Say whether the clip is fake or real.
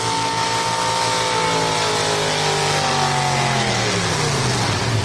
real